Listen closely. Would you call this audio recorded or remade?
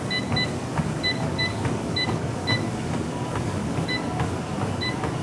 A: remade